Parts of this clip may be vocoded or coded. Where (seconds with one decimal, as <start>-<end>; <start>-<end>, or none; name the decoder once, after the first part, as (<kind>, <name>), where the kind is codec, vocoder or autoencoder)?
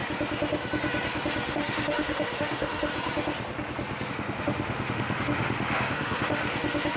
1.5-2.9 (autoencoder, DAC-VAE); 4.1-6.4